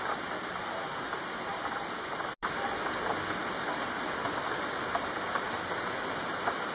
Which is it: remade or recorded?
recorded